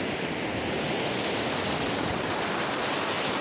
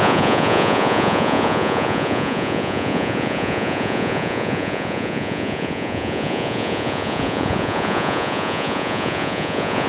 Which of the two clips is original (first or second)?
first